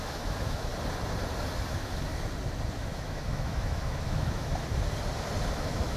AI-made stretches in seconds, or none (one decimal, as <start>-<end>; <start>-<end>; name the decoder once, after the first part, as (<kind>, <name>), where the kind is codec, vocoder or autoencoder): 0.0-0.7 (autoencoder, DAC-VAE); 1.7-2.1; 2.7-4.5; 5.5-6.0

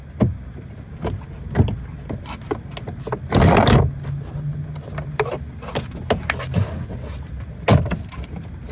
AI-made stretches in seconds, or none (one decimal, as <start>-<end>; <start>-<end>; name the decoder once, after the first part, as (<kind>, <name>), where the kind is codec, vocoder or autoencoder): none

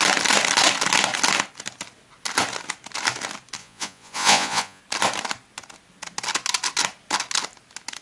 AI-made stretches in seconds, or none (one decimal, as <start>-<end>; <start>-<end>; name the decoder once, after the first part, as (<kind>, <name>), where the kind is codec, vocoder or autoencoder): 3.6-4.8 (vocoder, Vocos)

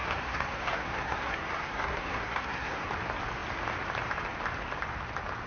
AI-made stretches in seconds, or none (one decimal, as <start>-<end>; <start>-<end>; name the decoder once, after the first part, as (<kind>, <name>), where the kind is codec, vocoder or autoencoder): 0.0-2.9 (codec, SNAC)

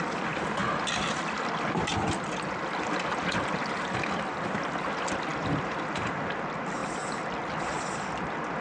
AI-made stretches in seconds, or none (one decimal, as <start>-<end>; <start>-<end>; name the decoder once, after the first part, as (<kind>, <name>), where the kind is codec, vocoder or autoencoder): 5.3-6.2 (vocoder, BigVGAN v2); 6.8-7.6